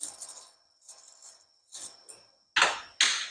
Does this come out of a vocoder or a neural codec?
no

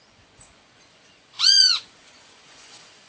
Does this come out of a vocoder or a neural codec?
yes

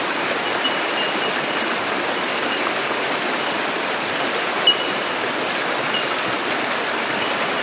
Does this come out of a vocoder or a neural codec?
no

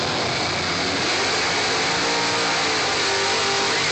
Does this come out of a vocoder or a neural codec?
no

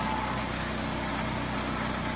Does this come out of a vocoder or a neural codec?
no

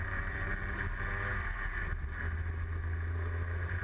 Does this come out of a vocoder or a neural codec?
no